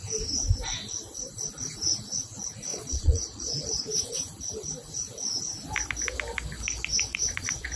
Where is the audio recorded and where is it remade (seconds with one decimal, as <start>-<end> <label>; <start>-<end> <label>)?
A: 0.0-2.7 recorded; 2.7-4.0 remade; 4.0-7.1 recorded; 7.1-7.8 remade